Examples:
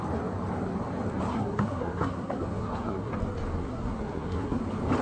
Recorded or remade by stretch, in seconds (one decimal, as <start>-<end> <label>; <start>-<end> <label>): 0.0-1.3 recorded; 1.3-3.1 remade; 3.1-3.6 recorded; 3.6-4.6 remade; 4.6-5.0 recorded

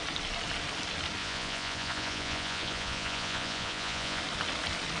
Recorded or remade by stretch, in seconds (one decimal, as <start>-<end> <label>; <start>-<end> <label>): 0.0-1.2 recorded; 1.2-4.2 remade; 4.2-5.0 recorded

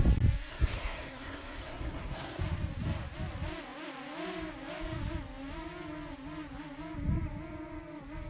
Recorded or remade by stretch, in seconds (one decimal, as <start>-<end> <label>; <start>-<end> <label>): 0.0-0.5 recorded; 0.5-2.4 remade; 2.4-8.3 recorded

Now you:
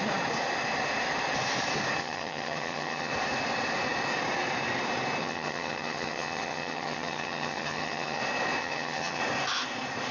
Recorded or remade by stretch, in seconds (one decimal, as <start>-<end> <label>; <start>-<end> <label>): 0.0-2.0 recorded; 2.0-3.1 remade; 3.1-5.2 recorded; 5.2-8.2 remade; 8.2-8.6 recorded; 8.6-9.2 remade; 9.2-10.1 recorded